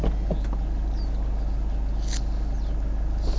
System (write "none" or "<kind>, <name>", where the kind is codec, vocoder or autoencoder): none